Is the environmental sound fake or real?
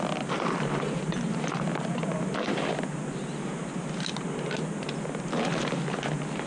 real